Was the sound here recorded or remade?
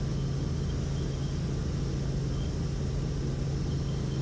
recorded